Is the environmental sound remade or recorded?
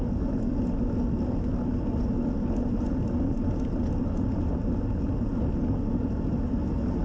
recorded